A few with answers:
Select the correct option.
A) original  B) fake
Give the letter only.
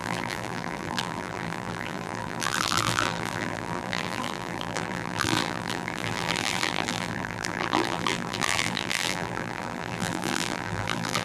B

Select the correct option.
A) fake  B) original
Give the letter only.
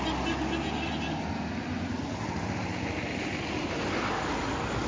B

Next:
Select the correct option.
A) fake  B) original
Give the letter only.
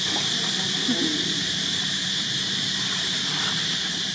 A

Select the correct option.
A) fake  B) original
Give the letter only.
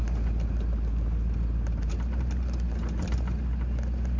B